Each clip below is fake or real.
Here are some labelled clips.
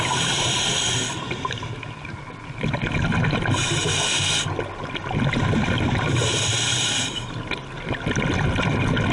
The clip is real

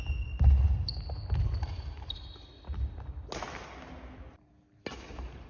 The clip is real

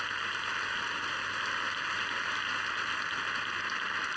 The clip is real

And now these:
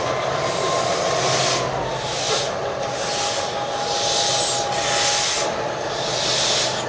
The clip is real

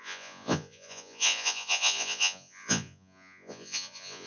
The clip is fake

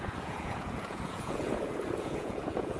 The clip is fake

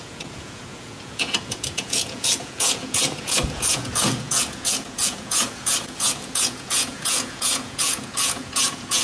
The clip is fake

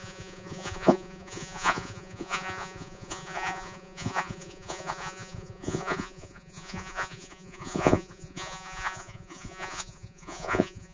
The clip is fake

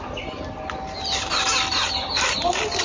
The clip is real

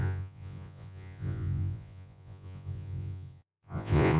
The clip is fake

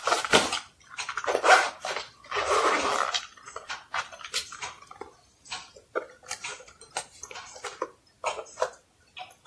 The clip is real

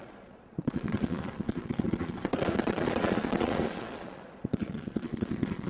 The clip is fake